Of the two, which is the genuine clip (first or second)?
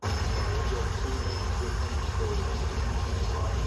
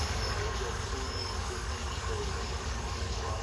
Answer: first